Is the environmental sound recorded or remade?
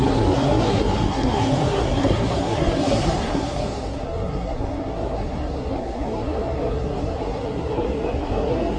remade